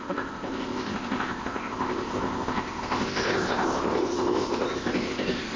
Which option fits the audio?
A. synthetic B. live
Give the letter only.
A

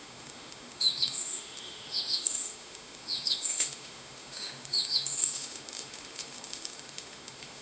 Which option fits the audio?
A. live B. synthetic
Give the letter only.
B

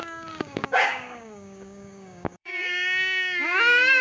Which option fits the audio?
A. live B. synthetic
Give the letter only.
B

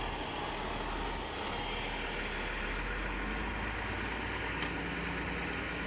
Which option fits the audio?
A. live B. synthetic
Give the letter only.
A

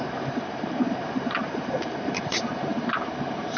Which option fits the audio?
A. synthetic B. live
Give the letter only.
A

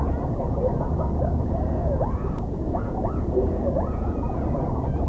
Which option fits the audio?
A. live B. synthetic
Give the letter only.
B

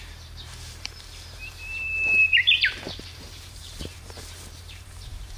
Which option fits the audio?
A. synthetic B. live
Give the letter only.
A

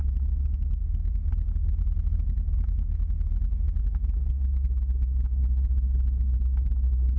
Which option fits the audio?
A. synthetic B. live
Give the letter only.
B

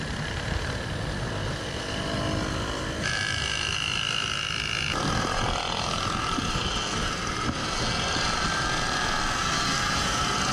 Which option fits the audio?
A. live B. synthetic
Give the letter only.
A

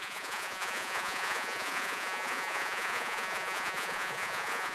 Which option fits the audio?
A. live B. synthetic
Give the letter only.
B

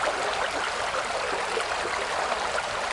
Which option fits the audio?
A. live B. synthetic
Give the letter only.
A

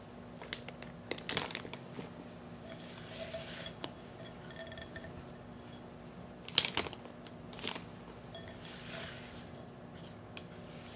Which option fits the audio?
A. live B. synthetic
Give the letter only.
A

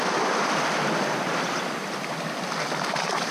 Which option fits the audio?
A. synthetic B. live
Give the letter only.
A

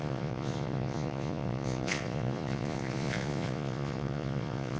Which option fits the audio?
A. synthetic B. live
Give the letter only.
A